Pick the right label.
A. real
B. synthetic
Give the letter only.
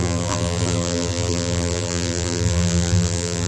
B